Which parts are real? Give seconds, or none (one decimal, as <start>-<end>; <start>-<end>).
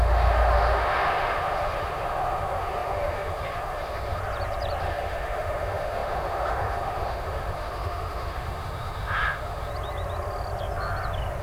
4.2-4.8; 9.7-11.4